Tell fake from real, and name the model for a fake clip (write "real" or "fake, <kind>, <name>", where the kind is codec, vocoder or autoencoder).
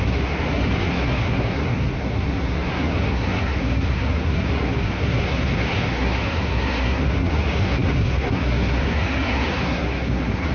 fake, codec, SNAC